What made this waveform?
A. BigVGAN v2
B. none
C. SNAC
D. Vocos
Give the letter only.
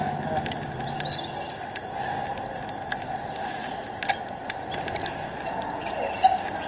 B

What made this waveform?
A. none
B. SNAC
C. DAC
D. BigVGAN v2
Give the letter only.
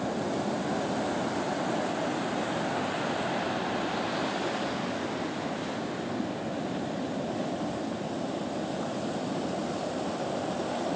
A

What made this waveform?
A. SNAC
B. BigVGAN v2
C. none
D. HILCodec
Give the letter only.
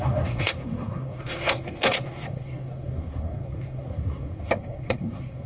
A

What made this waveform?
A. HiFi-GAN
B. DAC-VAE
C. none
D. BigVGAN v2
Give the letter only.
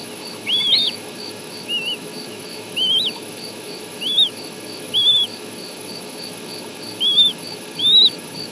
B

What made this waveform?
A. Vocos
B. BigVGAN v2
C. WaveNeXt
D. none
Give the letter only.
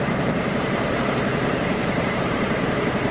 B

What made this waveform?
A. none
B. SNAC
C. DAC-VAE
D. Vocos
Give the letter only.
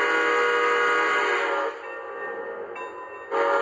A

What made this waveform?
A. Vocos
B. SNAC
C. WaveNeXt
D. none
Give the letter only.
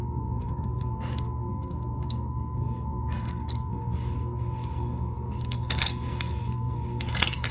B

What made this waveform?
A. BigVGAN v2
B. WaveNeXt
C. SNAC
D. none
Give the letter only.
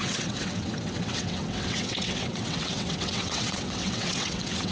B